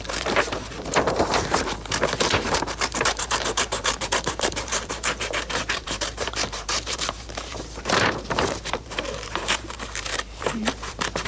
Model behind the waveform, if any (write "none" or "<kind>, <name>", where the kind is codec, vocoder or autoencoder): vocoder, BigVGAN v2